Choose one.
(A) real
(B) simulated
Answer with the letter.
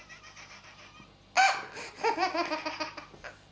A